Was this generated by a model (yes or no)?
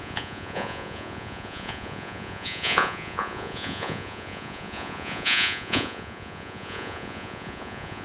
yes